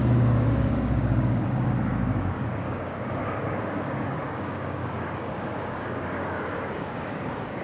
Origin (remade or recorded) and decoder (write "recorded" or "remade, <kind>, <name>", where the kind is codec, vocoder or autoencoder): remade, codec, DAC